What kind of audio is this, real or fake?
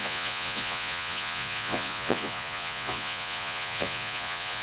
fake